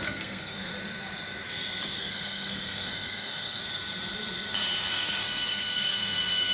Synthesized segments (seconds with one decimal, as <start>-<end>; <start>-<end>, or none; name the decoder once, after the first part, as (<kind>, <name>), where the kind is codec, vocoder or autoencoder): 0.0-0.7 (codec, SNAC); 2.0-3.6; 4.9-6.5